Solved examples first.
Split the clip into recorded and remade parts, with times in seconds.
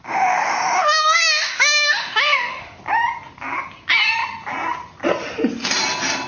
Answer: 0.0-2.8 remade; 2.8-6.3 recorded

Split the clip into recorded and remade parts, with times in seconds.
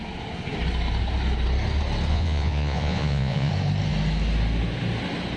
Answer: 0.0-2.1 recorded; 2.1-3.5 remade; 3.5-5.4 recorded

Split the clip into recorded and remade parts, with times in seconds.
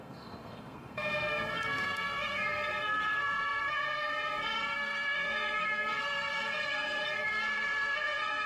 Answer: 0.0-8.5 remade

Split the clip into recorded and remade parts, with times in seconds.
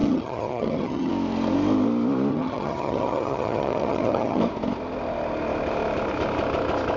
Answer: 0.0-1.1 remade; 1.1-2.3 recorded; 2.3-4.4 remade; 4.4-7.0 recorded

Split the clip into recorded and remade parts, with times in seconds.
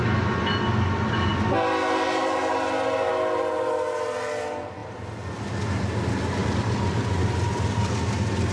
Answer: 0.0-8.5 recorded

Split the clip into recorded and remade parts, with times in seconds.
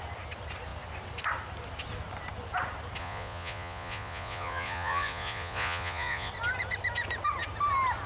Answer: 0.0-3.0 recorded; 3.0-6.3 remade; 6.3-8.1 recorded